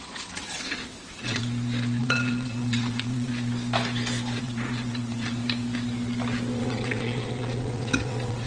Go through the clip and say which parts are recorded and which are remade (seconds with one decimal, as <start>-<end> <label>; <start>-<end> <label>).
0.0-1.4 remade; 1.4-2.0 recorded; 2.0-3.3 remade; 3.3-4.4 recorded; 4.4-5.4 remade; 5.4-6.6 recorded; 6.6-8.5 remade